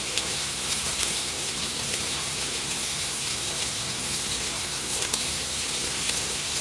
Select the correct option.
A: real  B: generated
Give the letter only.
B